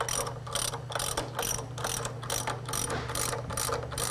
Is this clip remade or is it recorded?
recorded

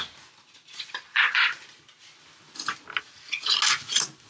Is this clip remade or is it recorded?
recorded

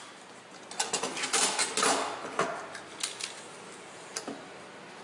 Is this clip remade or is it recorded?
recorded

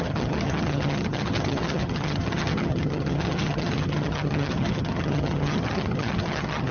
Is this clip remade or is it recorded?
remade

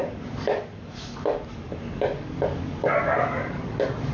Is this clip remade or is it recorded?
remade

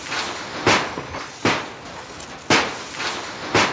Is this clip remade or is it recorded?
recorded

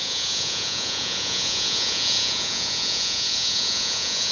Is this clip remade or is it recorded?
remade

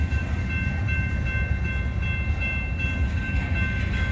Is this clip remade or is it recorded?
recorded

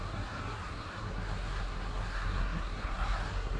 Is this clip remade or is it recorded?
remade